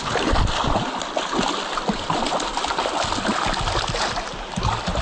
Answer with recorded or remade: recorded